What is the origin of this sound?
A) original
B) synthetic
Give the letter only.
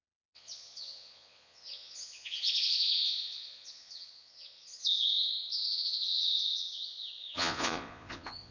B